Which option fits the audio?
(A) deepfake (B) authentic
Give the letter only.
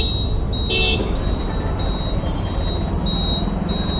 B